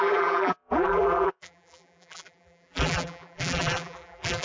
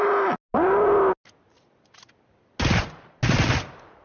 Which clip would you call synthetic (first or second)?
first